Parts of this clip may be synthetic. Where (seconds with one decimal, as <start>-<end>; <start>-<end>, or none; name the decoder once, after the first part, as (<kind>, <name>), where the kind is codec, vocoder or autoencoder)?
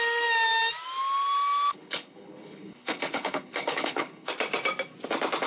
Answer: 1.7-4.3 (codec, HILCodec)